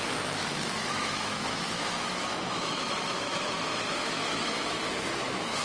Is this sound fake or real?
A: fake